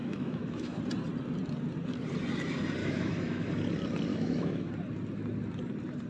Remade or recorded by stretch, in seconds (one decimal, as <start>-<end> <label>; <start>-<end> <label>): 0.0-0.8 remade; 0.8-2.8 recorded; 2.8-3.5 remade; 3.5-4.1 recorded; 4.1-4.7 remade; 4.7-6.1 recorded